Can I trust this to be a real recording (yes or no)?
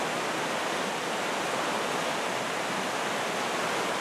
yes